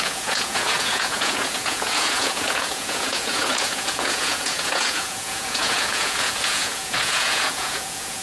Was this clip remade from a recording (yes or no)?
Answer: yes